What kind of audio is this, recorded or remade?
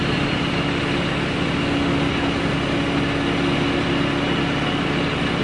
recorded